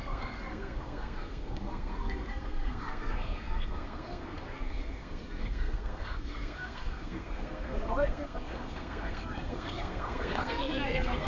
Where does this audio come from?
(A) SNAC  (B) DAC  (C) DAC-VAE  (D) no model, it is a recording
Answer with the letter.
A